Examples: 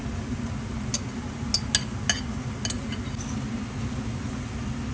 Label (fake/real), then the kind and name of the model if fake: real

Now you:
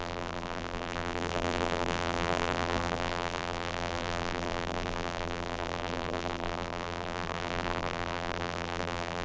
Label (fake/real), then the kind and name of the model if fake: fake, vocoder, BigVGAN v2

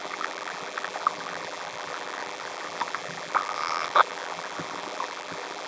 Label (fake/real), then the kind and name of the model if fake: fake, vocoder, BigVGAN v2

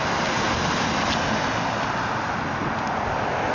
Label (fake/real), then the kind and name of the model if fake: real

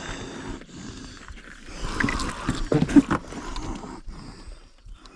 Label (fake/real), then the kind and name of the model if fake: real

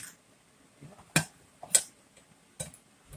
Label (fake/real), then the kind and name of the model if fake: real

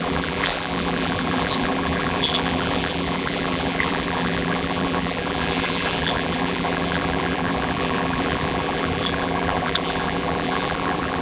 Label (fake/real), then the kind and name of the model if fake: fake, vocoder, BigVGAN v2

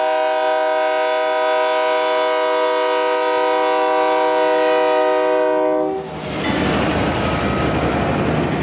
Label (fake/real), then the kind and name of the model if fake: real